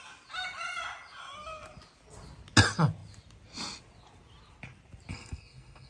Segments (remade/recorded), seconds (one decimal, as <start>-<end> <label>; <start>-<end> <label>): 0.0-5.1 recorded; 5.1-5.9 remade

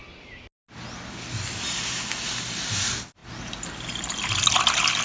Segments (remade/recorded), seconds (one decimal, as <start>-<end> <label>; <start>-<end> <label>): 0.0-5.0 recorded

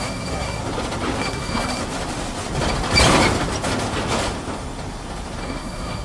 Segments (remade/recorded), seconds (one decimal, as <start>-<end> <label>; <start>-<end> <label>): 0.0-0.6 remade; 0.6-1.2 recorded; 1.2-1.8 remade; 1.8-5.4 recorded; 5.4-6.0 remade

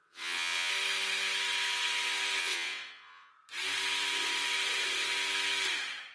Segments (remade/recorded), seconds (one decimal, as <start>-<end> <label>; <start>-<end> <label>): 0.0-0.7 remade; 0.7-2.4 recorded; 2.4-3.3 remade; 3.3-6.1 recorded

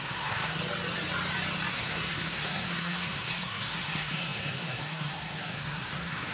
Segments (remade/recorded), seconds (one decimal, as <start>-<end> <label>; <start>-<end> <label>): 0.0-0.6 remade; 0.6-1.7 recorded; 1.7-6.3 remade

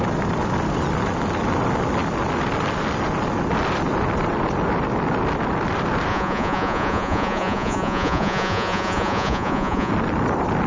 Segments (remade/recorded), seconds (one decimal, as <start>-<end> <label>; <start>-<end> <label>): 0.0-6.1 recorded; 6.1-9.9 remade; 9.9-10.7 recorded